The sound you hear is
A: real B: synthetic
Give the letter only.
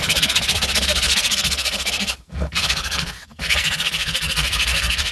B